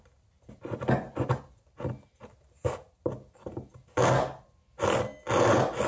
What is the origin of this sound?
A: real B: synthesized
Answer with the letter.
A